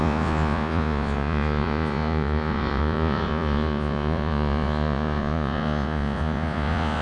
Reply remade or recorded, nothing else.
remade